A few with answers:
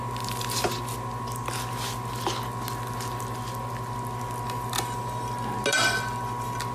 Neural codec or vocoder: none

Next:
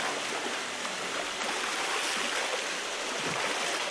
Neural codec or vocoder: none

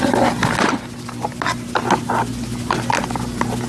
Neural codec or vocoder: none